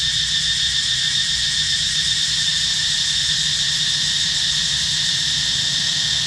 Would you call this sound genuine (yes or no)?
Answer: yes